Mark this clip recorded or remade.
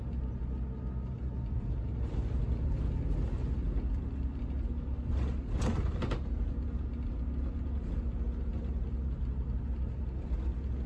recorded